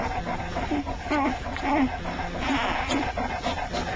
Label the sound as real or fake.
real